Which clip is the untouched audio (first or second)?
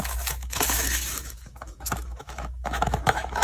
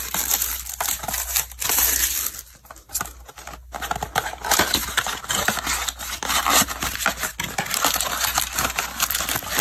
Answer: second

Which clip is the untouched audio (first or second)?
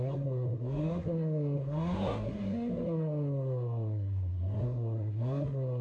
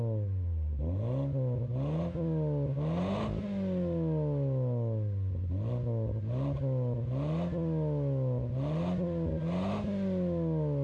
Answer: second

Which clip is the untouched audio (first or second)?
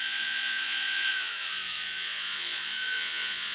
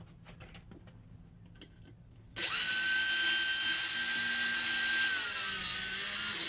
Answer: second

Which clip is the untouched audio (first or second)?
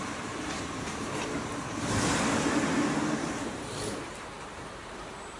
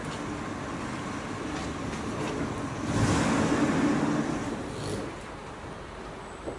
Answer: second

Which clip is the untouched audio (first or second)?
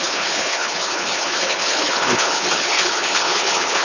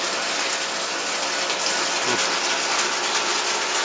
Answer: second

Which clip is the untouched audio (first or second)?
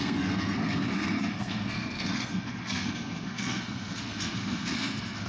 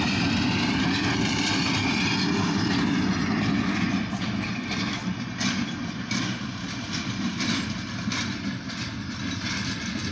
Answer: second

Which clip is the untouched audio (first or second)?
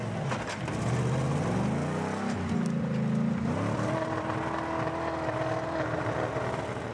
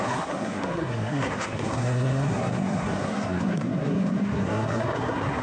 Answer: first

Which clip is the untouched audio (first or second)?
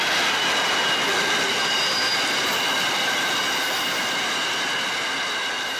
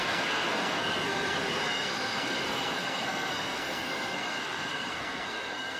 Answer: first